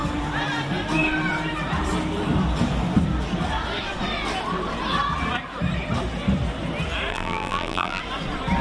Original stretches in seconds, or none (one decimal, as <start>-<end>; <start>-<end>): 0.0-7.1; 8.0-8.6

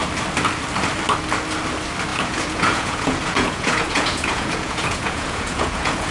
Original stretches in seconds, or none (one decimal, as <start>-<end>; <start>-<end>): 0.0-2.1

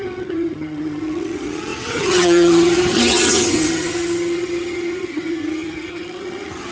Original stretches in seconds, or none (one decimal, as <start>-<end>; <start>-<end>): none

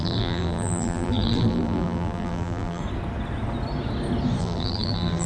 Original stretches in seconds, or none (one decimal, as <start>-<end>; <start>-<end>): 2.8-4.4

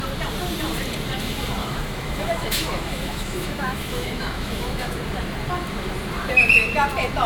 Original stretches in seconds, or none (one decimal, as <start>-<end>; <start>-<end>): 0.0-1.6; 5.0-7.3

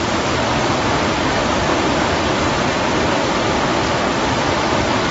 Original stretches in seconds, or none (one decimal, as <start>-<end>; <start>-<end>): 0.0-5.1

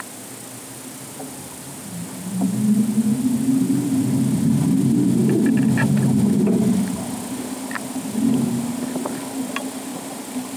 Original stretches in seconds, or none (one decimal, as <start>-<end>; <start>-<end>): 0.0-9.9

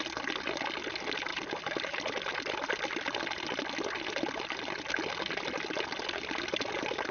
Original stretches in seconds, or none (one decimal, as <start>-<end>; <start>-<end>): 0.0-7.1